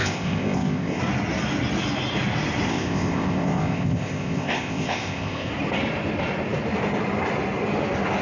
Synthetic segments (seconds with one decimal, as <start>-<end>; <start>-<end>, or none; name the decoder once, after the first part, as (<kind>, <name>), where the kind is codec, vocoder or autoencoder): 0.0-1.0 (codec, ZipCodec); 2.7-5.5